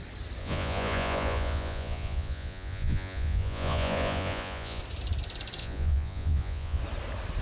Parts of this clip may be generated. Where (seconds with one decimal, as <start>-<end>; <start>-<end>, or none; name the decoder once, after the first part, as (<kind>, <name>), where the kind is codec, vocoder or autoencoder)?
0.4-4.8 (vocoder, Vocos); 5.6-6.8